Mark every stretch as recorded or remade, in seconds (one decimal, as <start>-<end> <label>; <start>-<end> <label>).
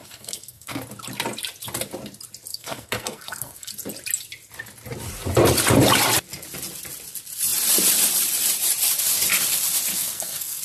0.0-0.8 remade; 0.8-2.5 recorded; 2.5-3.7 remade; 3.7-9.9 recorded; 9.9-10.6 remade